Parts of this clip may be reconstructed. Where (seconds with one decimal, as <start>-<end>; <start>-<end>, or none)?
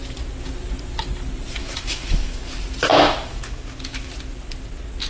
1.6-2.4; 2.9-4.1